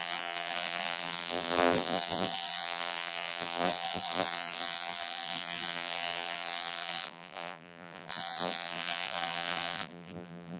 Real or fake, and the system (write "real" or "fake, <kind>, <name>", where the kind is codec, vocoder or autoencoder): fake, vocoder, BigVGAN v2